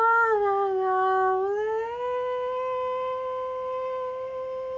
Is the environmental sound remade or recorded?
recorded